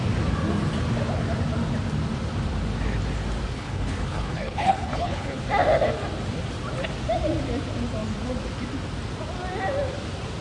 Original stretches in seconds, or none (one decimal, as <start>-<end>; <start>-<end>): 0.0-3.5; 5.4-10.4